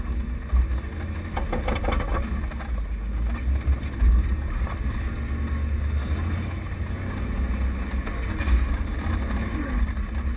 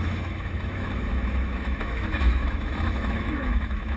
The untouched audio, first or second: first